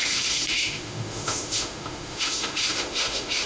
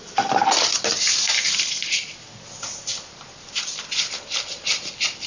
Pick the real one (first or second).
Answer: second